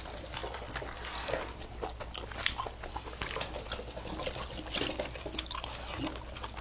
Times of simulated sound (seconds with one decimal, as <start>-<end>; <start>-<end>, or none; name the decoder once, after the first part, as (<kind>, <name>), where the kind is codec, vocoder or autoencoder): none

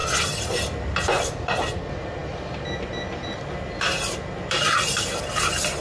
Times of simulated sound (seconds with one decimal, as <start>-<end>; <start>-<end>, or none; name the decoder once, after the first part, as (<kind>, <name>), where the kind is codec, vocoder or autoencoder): none

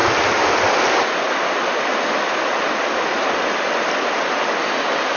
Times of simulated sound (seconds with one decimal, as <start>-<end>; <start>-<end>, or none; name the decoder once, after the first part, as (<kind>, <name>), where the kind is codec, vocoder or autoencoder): none

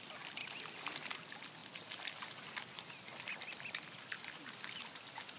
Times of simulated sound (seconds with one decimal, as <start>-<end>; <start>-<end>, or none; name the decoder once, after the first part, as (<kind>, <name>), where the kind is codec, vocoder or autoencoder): none

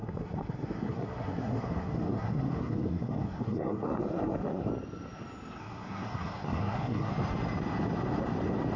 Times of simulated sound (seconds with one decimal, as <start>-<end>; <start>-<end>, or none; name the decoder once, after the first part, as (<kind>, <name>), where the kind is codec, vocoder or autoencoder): 0.0-4.7 (codec, SNAC); 5.6-7.1

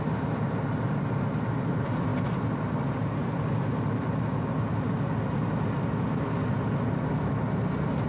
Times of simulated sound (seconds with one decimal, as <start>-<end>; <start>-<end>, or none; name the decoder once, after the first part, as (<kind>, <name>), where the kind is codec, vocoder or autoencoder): none

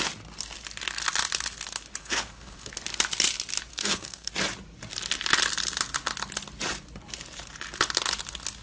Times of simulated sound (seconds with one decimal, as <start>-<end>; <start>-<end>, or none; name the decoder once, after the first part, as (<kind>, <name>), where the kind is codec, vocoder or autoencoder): 2.0-2.7 (codec, SNAC); 3.7-4.3